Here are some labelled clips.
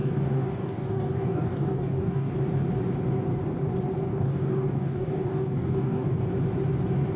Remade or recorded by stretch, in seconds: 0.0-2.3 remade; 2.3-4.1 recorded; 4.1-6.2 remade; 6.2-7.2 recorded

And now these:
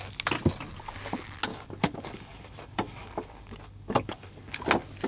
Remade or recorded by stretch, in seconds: 0.0-1.5 recorded; 1.5-4.6 remade; 4.6-5.1 recorded

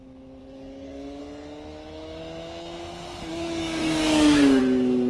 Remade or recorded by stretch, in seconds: 0.0-0.4 recorded; 0.4-1.2 remade; 1.2-1.7 recorded; 1.7-2.2 remade; 2.2-3.3 recorded; 3.3-4.6 remade; 4.6-5.1 recorded

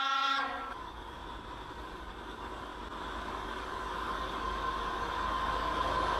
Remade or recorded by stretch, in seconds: 0.0-1.2 remade; 1.2-1.7 recorded; 1.7-2.7 remade; 2.7-3.2 recorded; 3.2-6.2 remade

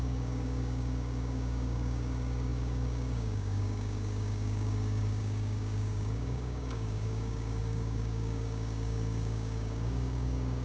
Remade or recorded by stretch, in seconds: 0.0-10.6 remade

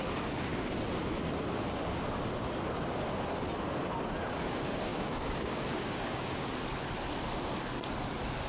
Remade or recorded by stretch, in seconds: 0.0-4.9 recorded; 4.9-6.5 remade; 6.5-8.5 recorded

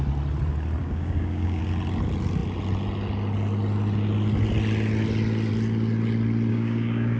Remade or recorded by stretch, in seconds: 0.0-0.8 recorded; 0.8-1.6 remade; 1.6-6.5 recorded; 6.5-7.2 remade

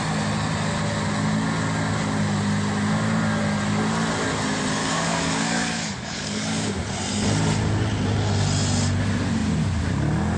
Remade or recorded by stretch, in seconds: 0.0-4.8 recorded; 4.8-6.8 remade; 6.8-10.4 recorded